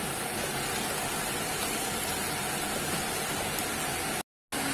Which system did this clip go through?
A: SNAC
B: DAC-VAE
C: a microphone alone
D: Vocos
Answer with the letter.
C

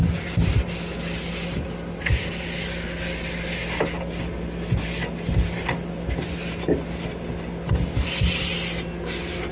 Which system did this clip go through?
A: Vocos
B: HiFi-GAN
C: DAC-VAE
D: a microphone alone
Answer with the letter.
D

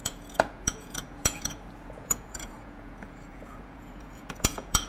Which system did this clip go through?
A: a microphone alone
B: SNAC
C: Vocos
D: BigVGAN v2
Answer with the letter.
C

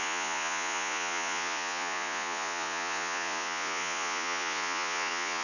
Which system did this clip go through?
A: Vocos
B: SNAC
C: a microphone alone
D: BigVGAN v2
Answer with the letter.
A